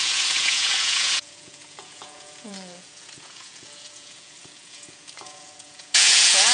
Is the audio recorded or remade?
remade